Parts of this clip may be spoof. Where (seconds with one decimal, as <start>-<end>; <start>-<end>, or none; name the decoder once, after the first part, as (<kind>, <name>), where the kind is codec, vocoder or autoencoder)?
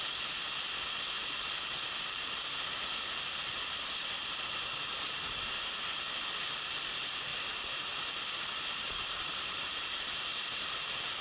4.9-5.7 (vocoder, BigVGAN v2); 7.3-10.7